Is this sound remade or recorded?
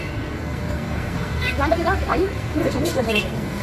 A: remade